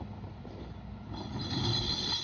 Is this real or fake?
real